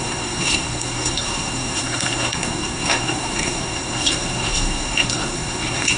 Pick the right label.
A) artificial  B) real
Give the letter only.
A